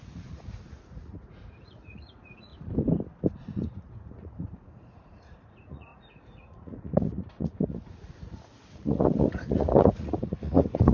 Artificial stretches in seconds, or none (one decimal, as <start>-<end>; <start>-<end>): 0.0-2.5; 3.4-10.9